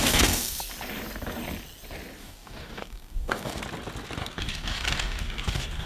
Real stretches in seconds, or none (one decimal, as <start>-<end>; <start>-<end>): 0.6-2.2; 3.6-4.2